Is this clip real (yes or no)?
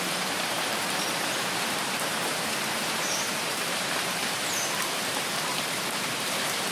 no